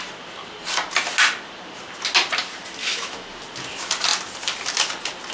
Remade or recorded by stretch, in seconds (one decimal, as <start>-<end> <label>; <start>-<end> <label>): 0.0-2.8 recorded; 2.8-3.4 remade; 3.4-5.3 recorded